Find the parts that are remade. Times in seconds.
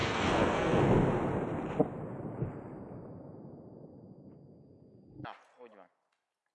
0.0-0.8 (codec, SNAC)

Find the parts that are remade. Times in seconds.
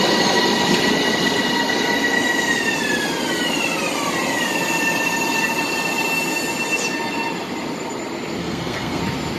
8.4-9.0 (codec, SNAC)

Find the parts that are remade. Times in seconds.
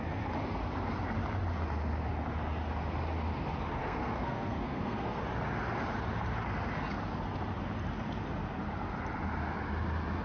3.8-5.2 (codec, SNAC)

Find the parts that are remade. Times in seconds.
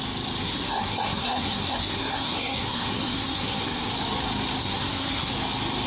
0.4-3.9 (codec, SNAC); 4.6-5.3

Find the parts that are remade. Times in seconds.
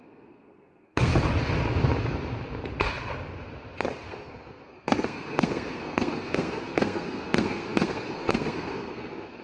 0.0-1.1 (codec, SNAC); 4.1-9.4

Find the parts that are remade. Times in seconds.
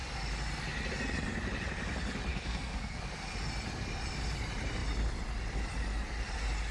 2.3-3.0 (codec, SNAC)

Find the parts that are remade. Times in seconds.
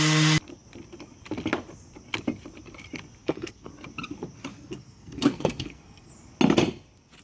3.2-3.7 (codec, SNAC); 4.5-6.1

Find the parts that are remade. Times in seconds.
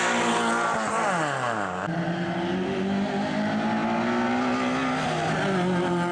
none